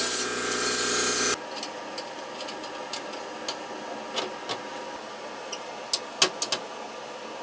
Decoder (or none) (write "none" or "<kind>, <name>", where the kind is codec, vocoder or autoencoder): none